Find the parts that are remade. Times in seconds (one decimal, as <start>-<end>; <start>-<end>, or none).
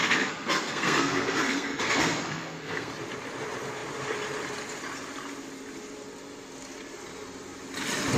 0.0-2.9